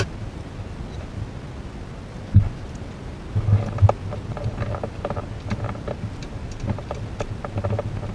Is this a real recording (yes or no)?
yes